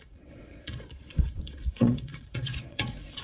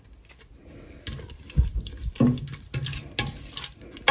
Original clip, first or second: second